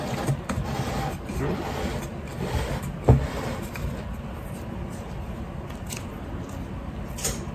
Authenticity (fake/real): real